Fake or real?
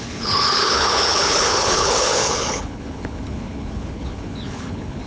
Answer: fake